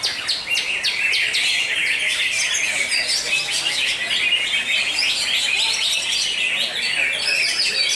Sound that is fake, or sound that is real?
real